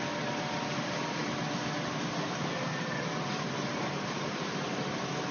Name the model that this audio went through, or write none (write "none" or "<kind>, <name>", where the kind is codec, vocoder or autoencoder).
none